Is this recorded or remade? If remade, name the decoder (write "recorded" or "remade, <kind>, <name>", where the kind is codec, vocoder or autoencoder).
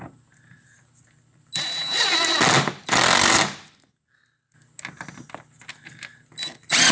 recorded